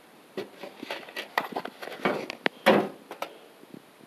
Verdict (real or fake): real